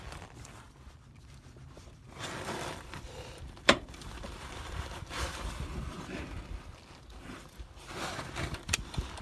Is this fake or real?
fake